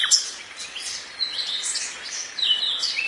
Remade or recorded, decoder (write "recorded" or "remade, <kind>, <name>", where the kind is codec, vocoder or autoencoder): remade, vocoder, BigVGAN v2